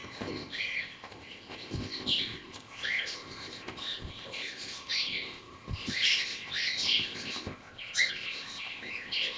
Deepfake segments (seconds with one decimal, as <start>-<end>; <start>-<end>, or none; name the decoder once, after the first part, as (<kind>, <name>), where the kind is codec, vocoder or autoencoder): 0.0-9.4 (codec, ZipCodec)